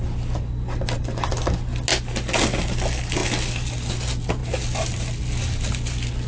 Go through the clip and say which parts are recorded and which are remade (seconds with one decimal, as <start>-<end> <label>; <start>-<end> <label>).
0.0-6.3 recorded